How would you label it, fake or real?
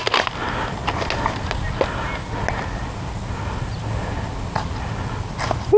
real